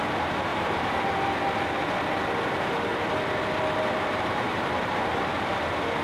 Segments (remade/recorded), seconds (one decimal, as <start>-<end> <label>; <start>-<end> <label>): 0.0-0.5 recorded; 0.5-1.0 remade; 1.0-4.1 recorded; 4.1-5.2 remade; 5.2-6.0 recorded